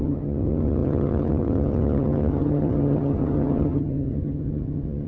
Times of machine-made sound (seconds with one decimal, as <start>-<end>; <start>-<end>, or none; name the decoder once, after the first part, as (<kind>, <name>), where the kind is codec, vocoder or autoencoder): 0.0-5.1 (vocoder, HiFi-GAN)